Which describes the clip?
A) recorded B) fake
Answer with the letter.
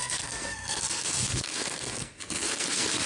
B